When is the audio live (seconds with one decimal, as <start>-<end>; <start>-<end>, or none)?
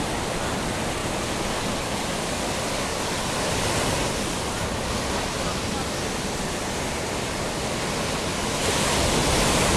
0.0-9.8